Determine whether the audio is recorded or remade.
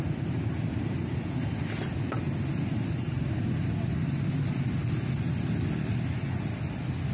recorded